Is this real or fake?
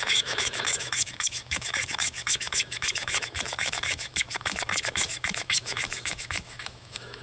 fake